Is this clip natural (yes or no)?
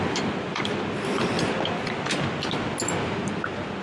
yes